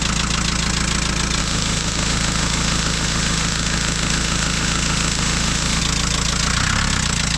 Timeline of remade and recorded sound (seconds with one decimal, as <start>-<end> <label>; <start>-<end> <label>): 0.0-1.4 recorded; 1.4-5.8 remade; 5.8-7.4 recorded